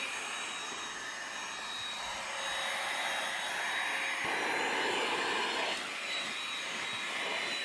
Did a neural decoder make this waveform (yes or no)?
no